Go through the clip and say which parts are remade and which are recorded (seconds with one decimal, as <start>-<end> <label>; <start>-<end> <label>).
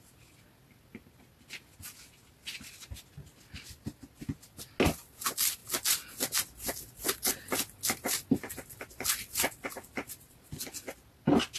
0.0-11.6 recorded